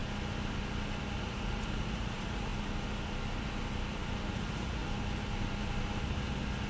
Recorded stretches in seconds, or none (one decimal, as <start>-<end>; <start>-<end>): 0.0-1.2; 2.5-4.3; 4.8-6.7